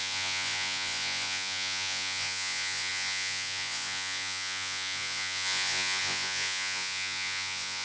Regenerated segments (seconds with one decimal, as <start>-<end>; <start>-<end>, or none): 0.0-7.8